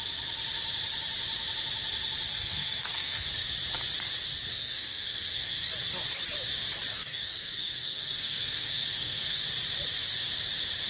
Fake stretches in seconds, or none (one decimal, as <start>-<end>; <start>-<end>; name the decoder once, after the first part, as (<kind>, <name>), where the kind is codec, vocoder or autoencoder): 2.3-3.3 (codec, SNAC); 4.5-5.7; 6.9-9.4